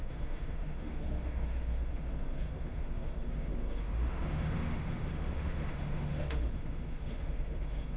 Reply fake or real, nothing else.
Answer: fake